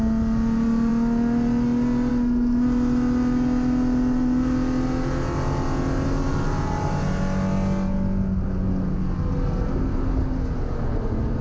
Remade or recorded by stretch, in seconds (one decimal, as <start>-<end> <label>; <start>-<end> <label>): 0.0-6.3 recorded; 6.3-6.9 remade; 6.9-11.4 recorded